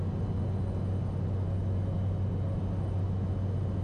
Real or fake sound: real